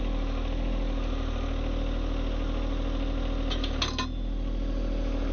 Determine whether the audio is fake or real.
real